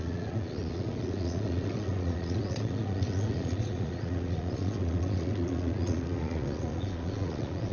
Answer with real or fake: fake